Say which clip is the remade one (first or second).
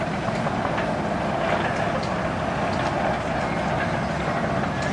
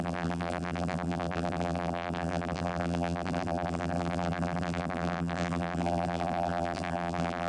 second